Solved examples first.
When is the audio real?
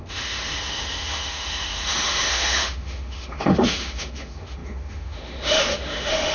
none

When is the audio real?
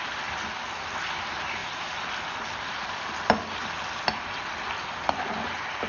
0.0-1.6; 5.1-5.9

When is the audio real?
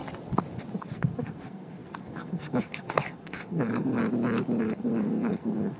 0.0-0.8; 4.0-4.6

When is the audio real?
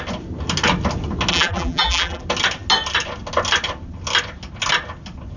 0.0-1.3; 2.2-5.4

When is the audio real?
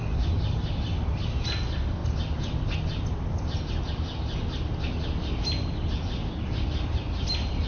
0.0-7.7